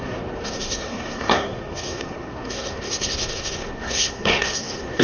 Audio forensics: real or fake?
fake